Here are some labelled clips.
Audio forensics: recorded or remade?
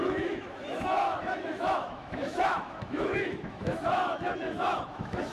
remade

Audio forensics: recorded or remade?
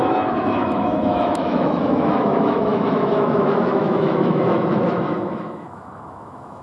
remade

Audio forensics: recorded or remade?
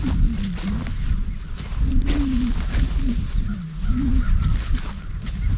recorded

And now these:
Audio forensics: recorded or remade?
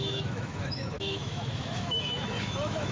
remade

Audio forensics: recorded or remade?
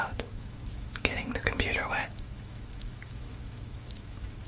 remade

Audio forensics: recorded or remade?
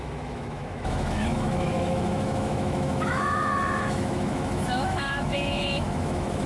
remade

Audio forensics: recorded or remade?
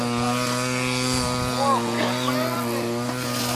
recorded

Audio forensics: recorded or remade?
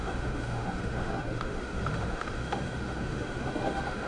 remade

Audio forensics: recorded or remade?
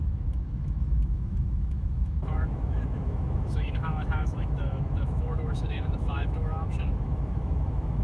remade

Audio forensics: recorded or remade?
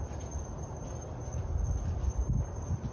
recorded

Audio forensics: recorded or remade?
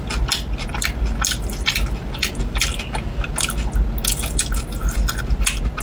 recorded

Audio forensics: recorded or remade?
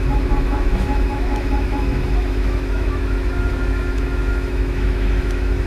remade